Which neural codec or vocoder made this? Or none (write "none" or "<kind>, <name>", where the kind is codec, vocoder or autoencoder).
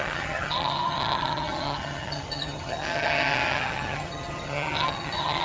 vocoder, HiFi-GAN